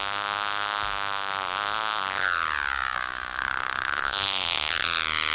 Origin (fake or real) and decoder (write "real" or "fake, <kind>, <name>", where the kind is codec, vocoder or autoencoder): fake, codec, DAC